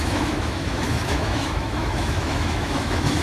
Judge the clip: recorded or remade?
remade